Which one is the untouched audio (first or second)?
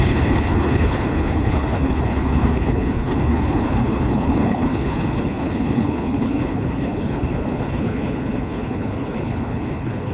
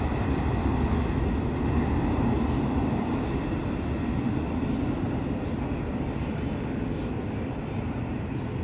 second